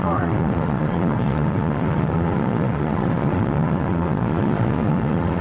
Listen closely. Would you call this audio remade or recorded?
remade